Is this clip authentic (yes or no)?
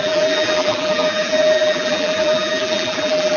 no